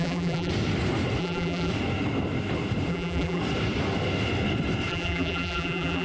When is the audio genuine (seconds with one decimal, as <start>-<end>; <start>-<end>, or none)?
0.5-1.2; 1.7-2.9; 3.4-4.9